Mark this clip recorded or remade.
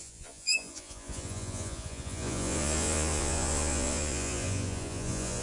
remade